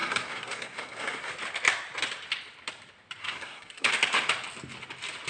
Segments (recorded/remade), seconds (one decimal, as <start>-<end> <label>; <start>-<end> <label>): 0.0-1.3 remade; 1.3-3.2 recorded; 3.2-3.9 remade; 3.9-5.3 recorded